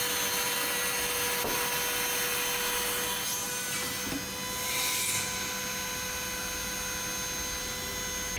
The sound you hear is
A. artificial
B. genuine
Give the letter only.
B